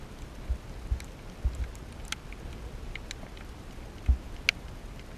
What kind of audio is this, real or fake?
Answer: real